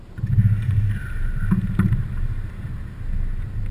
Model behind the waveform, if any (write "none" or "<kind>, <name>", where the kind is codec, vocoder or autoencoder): none